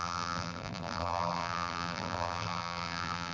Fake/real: fake